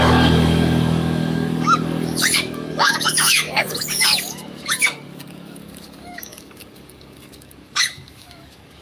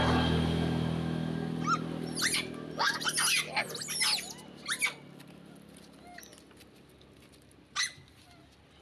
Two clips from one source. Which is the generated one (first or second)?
first